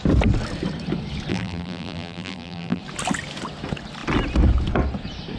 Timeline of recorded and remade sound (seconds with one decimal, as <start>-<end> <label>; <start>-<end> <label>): 0.0-1.3 recorded; 1.3-2.8 remade; 2.8-5.4 recorded